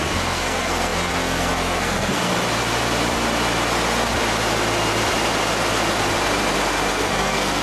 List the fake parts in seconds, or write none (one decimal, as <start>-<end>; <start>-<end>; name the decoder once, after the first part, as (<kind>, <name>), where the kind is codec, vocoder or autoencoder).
0.0-2.3 (codec, SNAC); 6.9-7.6